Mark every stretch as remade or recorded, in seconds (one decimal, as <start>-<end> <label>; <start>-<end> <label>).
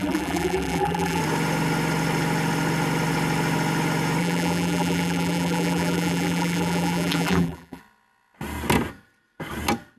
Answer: 0.0-1.2 remade; 1.2-4.2 recorded; 4.2-7.8 remade; 7.8-10.0 recorded